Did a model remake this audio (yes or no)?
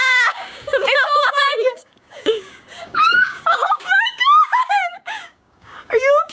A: yes